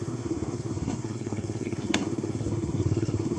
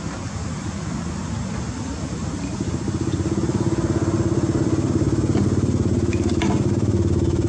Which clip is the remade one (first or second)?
first